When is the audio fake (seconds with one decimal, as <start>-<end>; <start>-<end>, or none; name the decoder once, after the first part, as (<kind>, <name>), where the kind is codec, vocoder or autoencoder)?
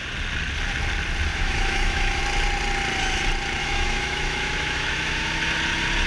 1.3-2.2 (autoencoder, DAC-VAE); 3.6-5.4